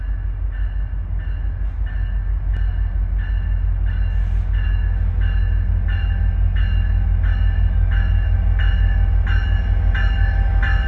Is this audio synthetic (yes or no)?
no